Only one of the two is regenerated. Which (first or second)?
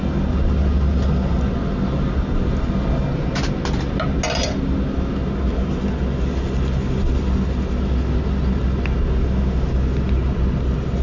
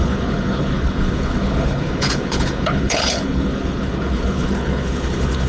second